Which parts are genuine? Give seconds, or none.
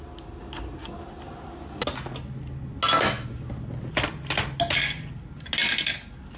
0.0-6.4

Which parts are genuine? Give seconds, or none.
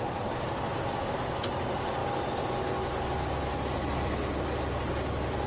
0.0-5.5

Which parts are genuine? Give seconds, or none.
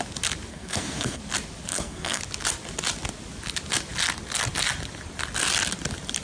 0.0-0.5; 1.2-1.7; 2.2-6.2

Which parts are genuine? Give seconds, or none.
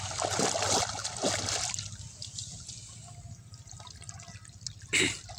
0.0-5.4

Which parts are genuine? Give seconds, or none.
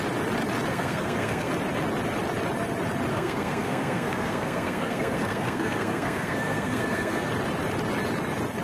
0.0-0.7; 1.5-3.1; 7.3-8.6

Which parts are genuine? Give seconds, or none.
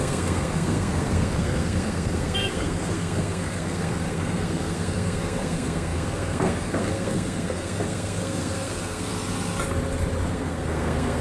9.1-10.3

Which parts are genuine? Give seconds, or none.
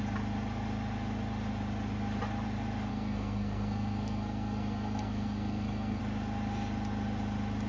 0.0-2.9; 6.0-7.7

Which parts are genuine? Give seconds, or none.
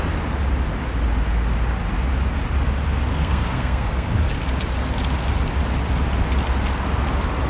0.0-3.1; 4.1-7.5